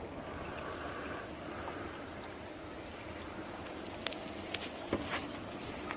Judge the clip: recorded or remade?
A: recorded